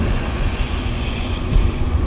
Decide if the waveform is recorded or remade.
remade